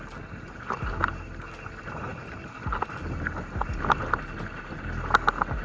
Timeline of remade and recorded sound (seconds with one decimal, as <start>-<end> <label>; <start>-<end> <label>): 0.0-5.6 recorded